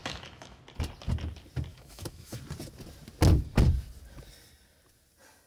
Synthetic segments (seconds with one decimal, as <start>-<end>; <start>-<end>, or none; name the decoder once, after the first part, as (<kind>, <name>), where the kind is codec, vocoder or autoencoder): 0.0-0.6 (autoencoder, DAC-VAE); 1.7-2.4